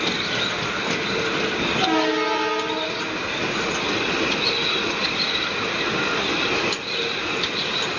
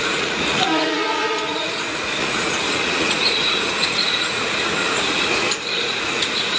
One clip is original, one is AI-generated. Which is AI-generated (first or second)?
second